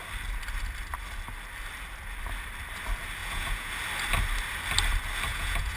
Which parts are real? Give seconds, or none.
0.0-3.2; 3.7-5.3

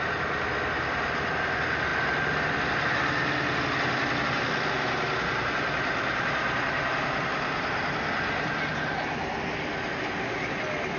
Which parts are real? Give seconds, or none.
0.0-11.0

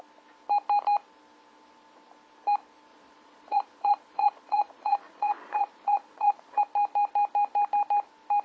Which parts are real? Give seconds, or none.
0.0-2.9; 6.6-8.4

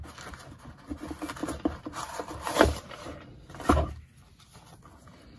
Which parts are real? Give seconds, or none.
0.0-5.4

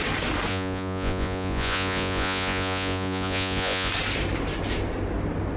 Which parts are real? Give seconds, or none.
0.0-0.5; 3.9-5.6

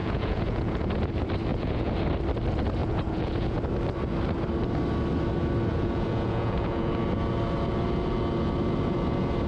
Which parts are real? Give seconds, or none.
1.0-1.5; 2.0-2.8; 3.6-5.7; 6.9-9.5

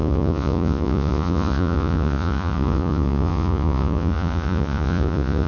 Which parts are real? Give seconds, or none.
none